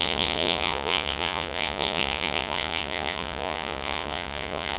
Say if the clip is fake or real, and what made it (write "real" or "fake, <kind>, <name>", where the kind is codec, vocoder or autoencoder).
fake, vocoder, Vocos